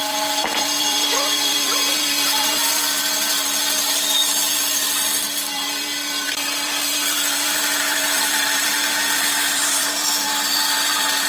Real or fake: fake